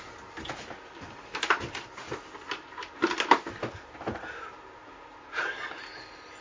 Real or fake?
real